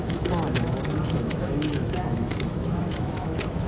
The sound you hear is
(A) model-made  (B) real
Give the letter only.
A